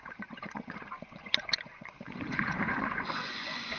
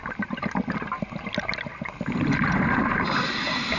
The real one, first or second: second